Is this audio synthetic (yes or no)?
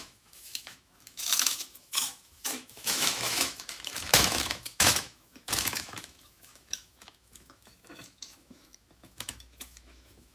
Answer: yes